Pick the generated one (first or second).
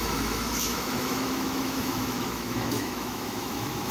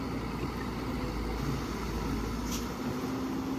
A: first